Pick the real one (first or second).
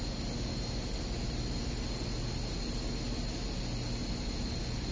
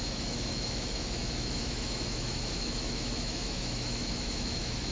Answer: first